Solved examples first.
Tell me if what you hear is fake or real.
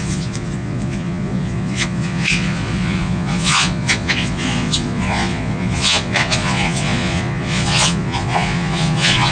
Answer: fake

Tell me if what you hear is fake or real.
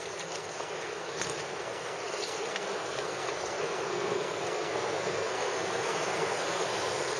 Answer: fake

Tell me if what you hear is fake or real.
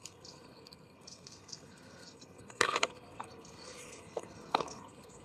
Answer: fake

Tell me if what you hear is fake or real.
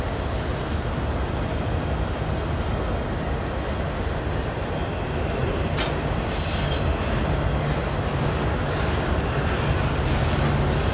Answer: real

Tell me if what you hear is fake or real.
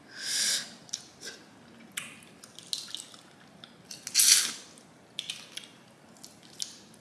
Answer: real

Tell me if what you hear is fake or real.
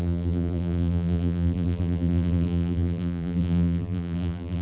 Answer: fake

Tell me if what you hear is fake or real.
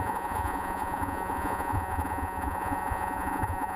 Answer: fake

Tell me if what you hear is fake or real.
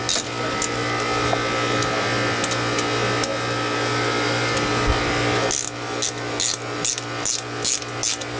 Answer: real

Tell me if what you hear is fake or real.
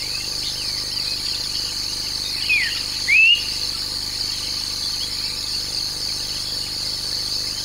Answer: real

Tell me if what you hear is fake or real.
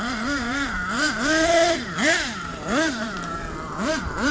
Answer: fake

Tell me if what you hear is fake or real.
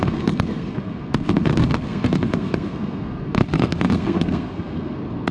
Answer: fake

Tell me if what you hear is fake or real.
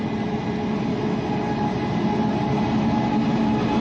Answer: real